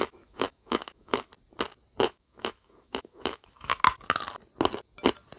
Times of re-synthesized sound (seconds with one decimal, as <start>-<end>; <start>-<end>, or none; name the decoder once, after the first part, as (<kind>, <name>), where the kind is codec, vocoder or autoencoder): 0.0-1.3 (autoencoder, DAC-VAE); 2.0-3.7